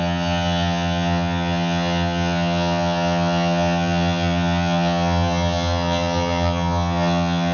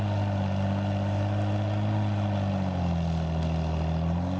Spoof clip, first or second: first